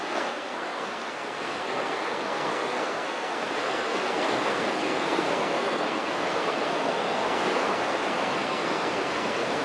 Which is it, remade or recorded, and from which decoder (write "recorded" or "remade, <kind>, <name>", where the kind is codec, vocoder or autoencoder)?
remade, codec, SNAC